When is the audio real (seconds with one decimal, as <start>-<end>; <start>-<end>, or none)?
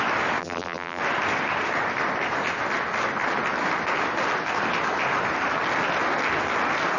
0.0-0.4; 1.0-7.0